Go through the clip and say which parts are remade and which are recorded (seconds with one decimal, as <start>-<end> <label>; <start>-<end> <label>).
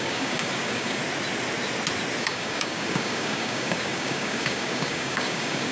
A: 0.0-1.0 remade; 1.0-2.2 recorded; 2.2-5.7 remade